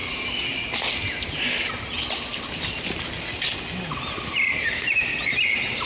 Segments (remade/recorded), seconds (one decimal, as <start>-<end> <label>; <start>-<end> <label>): 0.0-5.9 recorded